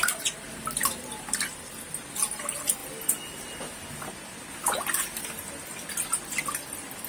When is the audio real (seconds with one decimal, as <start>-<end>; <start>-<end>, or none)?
0.0-7.1